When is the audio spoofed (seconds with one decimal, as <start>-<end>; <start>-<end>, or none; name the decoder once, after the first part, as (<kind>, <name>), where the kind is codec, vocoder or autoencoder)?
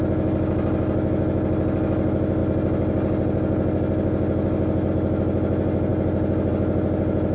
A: none